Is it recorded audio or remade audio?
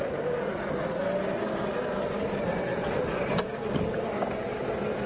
recorded